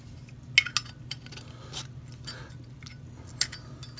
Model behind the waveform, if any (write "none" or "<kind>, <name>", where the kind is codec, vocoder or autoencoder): none